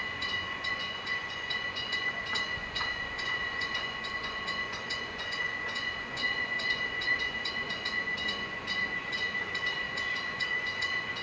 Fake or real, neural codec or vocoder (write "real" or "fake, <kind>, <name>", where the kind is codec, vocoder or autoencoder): fake, vocoder, Vocos